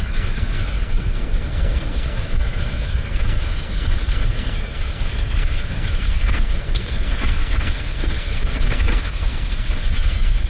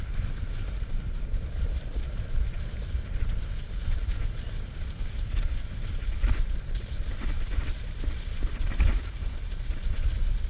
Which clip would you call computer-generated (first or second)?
first